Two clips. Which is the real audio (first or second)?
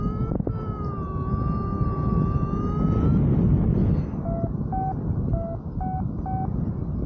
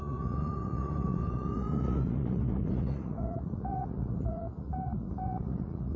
first